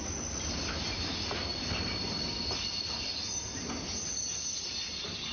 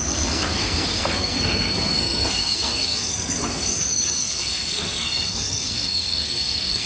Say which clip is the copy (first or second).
second